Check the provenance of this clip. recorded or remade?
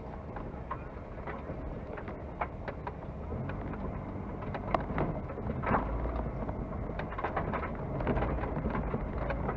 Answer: recorded